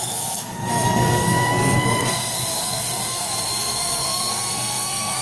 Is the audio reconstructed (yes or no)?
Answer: yes